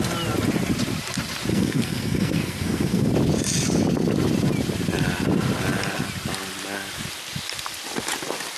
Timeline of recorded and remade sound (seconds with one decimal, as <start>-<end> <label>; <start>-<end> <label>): 0.0-1.5 recorded; 1.5-3.1 remade; 3.1-8.6 recorded